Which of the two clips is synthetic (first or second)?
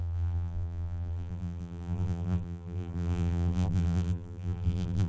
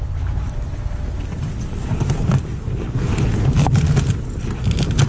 first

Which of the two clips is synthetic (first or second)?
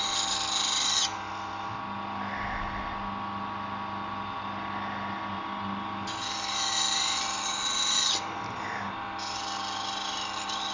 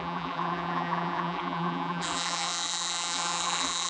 second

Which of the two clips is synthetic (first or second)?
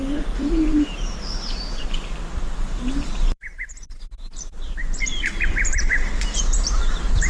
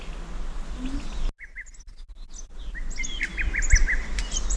first